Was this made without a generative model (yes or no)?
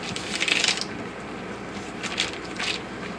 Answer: yes